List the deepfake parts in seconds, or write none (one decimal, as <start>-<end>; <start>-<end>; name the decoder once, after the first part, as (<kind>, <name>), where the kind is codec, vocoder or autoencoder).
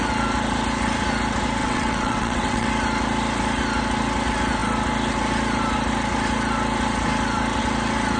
1.6-2.7 (vocoder, WaveNeXt)